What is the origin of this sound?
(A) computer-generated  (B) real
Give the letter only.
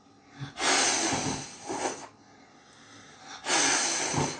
B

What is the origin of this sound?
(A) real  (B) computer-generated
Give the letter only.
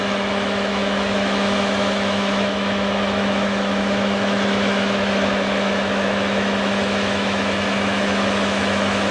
B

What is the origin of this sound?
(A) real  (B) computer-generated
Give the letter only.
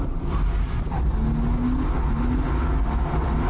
A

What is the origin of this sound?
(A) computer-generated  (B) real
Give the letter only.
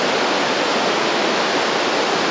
B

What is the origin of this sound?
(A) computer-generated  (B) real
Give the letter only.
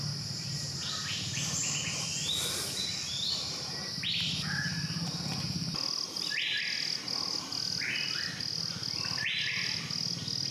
B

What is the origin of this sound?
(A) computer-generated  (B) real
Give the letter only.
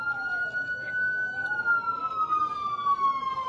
B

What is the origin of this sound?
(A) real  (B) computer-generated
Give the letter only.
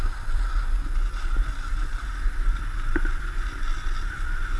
A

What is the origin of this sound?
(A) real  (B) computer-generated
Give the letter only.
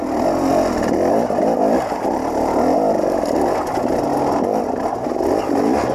A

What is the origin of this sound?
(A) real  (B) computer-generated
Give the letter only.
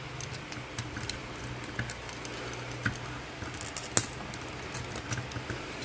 A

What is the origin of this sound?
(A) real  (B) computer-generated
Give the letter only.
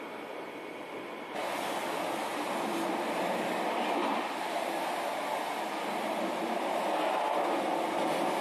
A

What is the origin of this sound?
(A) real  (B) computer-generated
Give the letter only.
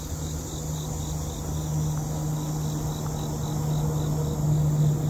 A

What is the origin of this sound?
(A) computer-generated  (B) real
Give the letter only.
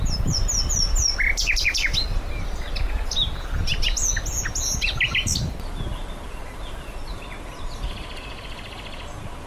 B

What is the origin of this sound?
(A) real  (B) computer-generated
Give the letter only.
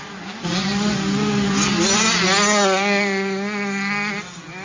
A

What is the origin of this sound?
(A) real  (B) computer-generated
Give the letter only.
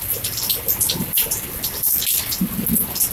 A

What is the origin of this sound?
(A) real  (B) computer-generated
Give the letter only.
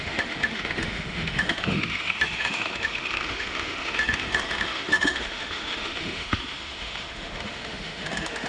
B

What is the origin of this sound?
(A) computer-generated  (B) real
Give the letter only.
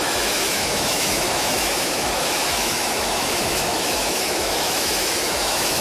A